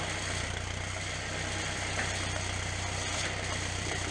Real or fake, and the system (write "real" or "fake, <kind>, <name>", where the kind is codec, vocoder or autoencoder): fake, vocoder, BigVGAN v2